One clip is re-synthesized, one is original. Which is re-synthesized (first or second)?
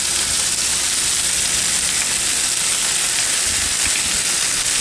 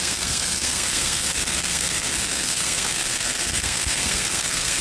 second